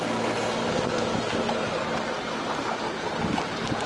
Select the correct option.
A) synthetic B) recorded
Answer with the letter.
B